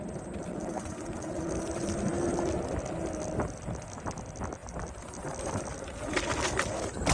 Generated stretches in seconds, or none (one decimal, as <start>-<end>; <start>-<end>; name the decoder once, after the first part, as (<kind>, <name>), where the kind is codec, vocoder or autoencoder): 0.5-1.5 (vocoder, WaveNeXt)